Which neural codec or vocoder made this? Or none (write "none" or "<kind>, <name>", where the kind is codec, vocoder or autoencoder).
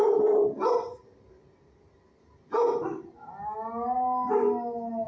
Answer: none